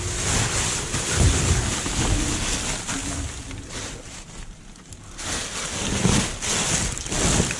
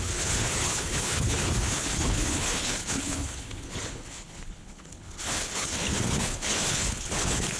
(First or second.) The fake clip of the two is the second